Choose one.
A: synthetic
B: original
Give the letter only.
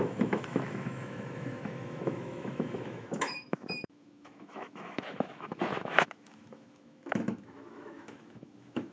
A